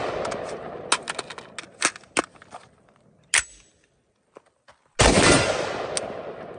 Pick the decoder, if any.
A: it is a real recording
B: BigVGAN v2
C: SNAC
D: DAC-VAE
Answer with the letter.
A